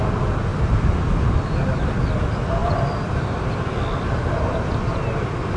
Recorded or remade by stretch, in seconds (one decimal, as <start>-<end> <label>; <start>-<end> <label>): 0.0-0.5 recorded; 0.5-2.2 remade; 2.2-2.6 recorded; 2.6-3.3 remade; 3.3-5.6 recorded

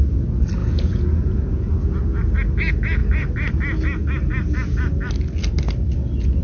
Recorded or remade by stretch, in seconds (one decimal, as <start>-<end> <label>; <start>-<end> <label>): 0.0-0.6 recorded; 0.6-1.7 remade; 1.7-6.4 recorded

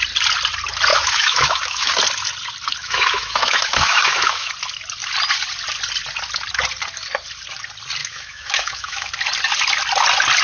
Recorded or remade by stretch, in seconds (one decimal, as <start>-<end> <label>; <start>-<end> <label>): 0.0-0.9 recorded; 0.9-1.9 remade; 1.9-2.8 recorded; 2.8-4.5 remade; 4.5-8.0 recorded; 8.0-9.1 remade; 9.1-10.4 recorded

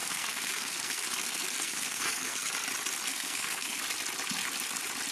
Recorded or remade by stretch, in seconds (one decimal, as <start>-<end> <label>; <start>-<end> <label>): 0.0-2.5 remade; 2.5-3.1 recorded; 3.1-3.8 remade; 3.8-5.1 recorded

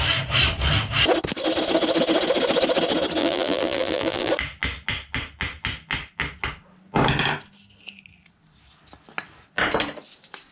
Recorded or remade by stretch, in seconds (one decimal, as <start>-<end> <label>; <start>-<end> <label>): 0.0-3.2 recorded; 3.2-4.3 remade; 4.3-10.5 recorded

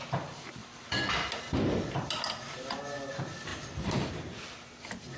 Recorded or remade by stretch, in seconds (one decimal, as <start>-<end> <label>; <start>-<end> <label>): 0.0-3.5 recorded; 3.5-4.1 remade; 4.1-5.2 recorded

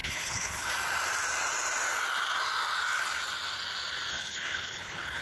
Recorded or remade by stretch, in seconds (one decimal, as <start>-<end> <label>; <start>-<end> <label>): 0.0-0.7 remade; 0.7-4.1 recorded; 4.1-5.2 remade

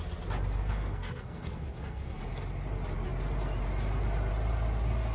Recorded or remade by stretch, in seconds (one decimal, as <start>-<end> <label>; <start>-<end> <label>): 0.0-0.6 recorded; 0.6-2.2 remade; 2.2-5.1 recorded